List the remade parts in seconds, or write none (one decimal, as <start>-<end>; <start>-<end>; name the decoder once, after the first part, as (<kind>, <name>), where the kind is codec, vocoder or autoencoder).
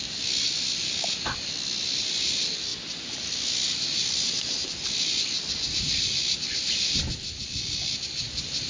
none